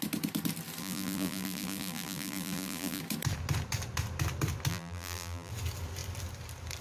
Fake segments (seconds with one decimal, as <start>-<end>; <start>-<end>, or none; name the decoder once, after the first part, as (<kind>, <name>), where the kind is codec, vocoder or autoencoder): 0.8-3.0 (vocoder, BigVGAN v2); 4.7-5.5